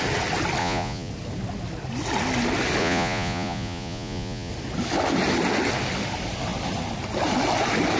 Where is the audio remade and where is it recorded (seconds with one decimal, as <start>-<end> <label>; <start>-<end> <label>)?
0.0-0.6 recorded; 0.6-1.1 remade; 1.1-2.8 recorded; 2.8-4.5 remade; 4.5-8.0 recorded